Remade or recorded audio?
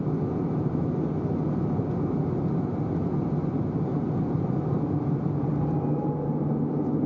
recorded